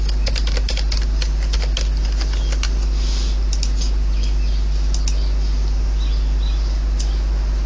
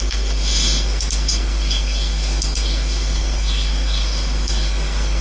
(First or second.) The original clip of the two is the first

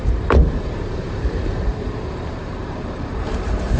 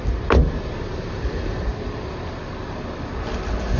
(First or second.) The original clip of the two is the second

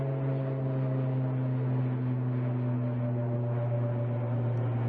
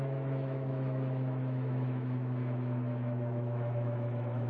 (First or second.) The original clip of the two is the first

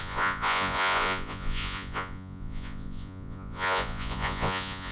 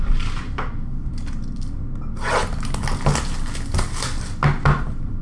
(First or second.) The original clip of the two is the second